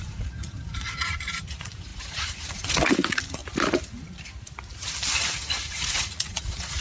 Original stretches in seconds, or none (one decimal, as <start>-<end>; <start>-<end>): 3.4-5.1